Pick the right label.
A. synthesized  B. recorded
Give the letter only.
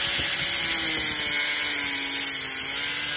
B